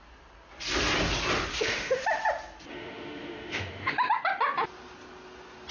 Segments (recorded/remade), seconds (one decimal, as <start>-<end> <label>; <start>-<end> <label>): 0.0-1.5 recorded; 1.5-2.2 remade; 2.2-2.7 recorded; 2.7-4.1 remade; 4.1-5.7 recorded